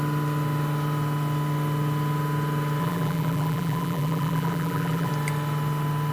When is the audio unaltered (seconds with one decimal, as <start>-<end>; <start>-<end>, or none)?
0.0-2.8; 5.1-6.1